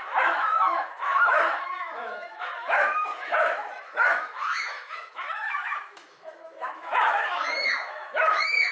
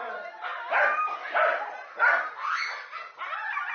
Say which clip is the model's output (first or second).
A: first